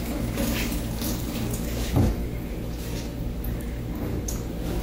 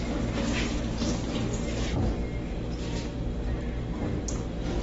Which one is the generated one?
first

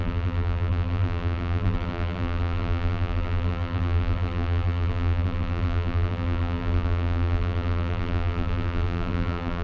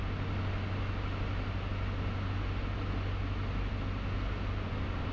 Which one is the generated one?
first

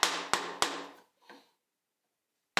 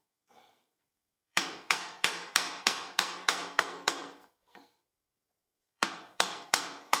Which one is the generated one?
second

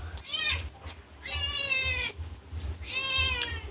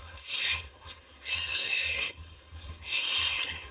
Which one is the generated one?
second